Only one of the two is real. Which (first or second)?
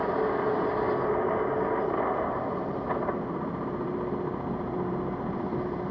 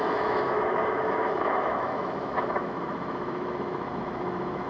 first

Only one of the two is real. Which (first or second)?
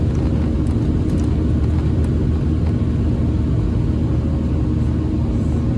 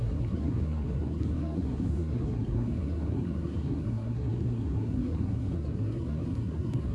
first